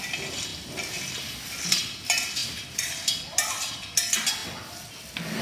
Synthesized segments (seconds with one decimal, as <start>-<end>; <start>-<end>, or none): 2.4-3.2